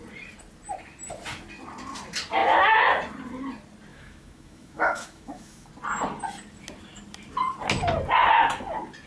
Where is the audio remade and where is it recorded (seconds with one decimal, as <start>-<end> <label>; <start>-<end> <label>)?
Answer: 0.0-3.9 recorded; 3.9-5.7 remade; 5.7-9.1 recorded